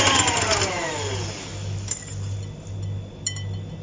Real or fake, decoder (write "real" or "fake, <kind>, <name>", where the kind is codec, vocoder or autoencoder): real